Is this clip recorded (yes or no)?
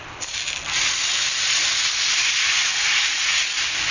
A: yes